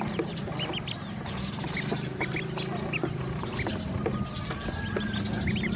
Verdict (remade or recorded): recorded